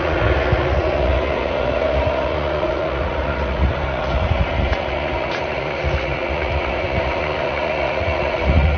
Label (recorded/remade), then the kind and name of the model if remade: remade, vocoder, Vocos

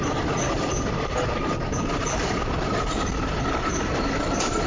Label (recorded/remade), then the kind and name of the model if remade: recorded